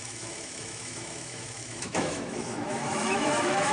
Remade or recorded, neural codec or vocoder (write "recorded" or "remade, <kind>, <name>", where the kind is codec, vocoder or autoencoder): remade, autoencoder, DAC-VAE